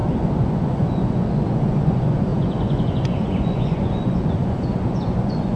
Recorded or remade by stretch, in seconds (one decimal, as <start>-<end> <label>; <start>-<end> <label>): 0.0-5.6 remade